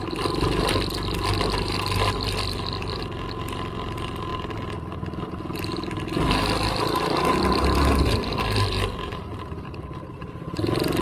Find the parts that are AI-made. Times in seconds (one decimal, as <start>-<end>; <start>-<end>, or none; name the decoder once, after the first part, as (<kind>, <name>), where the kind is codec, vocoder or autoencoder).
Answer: none